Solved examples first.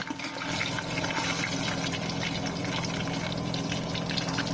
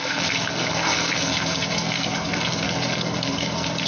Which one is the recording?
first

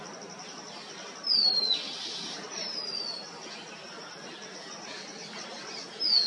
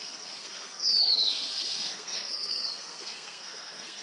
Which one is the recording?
first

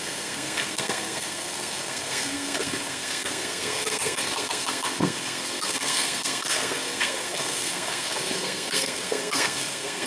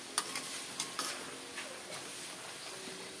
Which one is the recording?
second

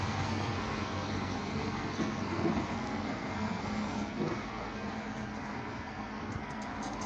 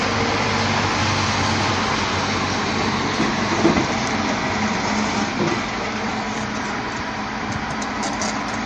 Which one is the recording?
second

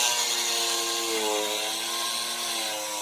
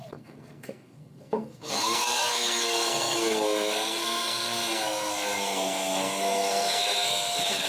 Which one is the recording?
first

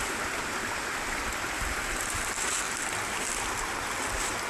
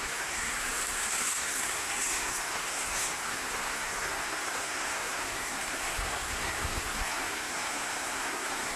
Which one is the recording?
first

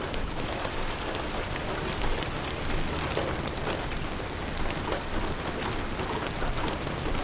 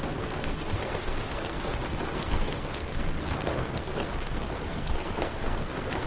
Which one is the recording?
first